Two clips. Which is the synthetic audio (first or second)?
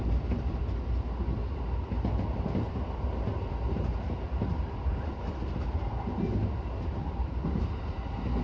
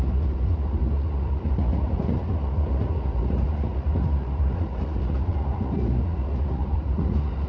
second